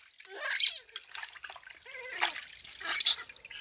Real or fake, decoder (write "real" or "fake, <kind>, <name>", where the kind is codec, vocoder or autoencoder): real